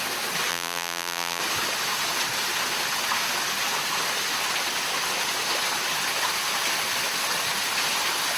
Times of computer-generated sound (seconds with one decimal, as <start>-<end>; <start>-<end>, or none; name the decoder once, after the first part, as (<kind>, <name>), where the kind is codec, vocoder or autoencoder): 0.5-1.4 (vocoder, BigVGAN v2)